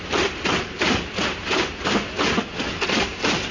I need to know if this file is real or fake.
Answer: real